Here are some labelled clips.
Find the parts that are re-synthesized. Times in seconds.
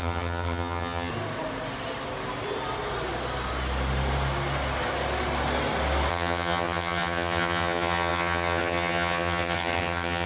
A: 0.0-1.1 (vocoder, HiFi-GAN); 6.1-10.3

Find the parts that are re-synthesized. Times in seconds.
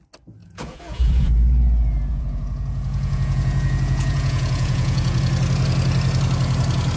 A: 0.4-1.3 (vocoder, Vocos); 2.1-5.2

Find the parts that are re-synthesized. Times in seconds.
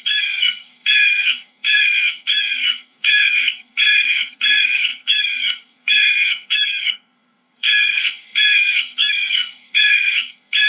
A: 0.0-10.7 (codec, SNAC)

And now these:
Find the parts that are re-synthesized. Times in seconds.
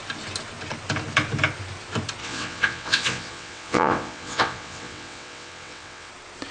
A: 2.2-6.1 (vocoder, WaveNeXt)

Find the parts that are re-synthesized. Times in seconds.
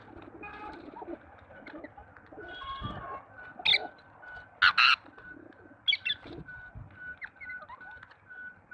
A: none